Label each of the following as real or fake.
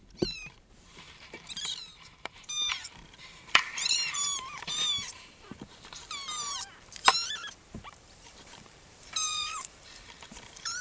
fake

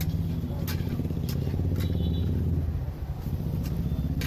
real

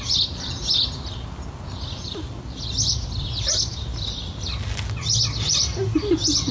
real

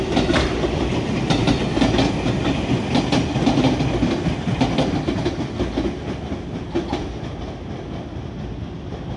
real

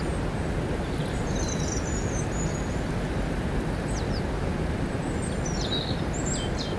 real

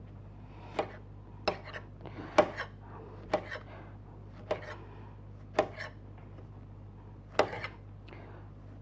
real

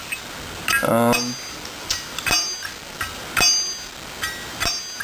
real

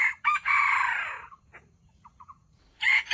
fake